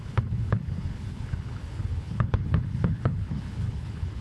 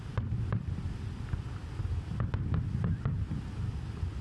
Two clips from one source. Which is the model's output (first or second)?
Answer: first